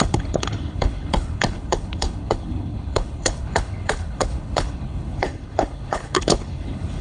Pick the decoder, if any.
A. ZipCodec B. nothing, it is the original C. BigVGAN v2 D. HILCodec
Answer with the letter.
D